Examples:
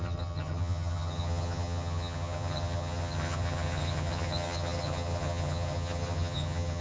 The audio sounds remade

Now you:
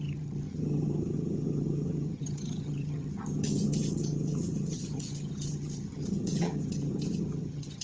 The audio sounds remade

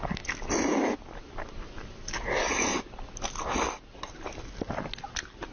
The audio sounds recorded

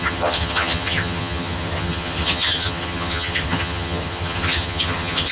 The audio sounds remade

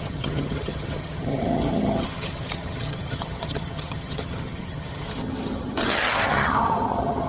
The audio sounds remade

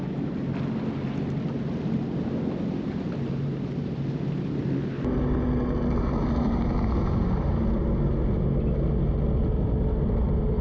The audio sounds recorded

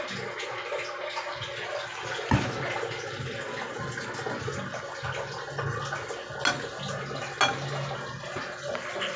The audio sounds recorded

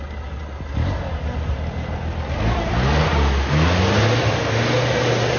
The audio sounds recorded